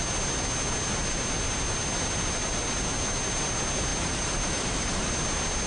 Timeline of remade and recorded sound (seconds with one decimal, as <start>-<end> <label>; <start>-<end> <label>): 0.0-3.9 recorded; 3.9-5.1 remade; 5.1-5.7 recorded